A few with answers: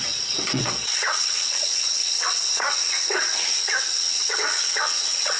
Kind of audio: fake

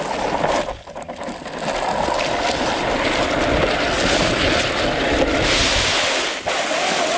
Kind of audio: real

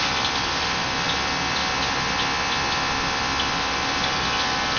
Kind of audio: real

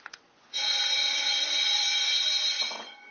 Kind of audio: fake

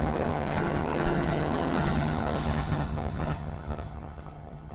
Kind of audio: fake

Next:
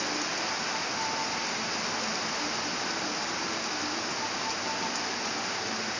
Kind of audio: real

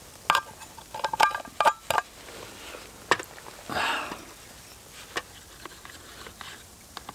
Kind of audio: real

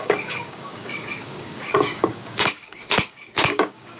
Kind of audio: fake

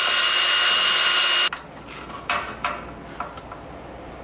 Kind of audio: real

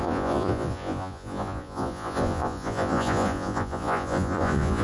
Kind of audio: fake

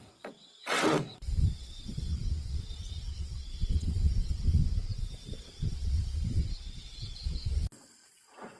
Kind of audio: fake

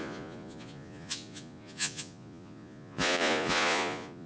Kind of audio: fake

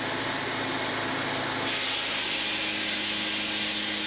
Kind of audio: real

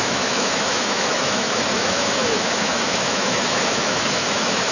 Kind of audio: fake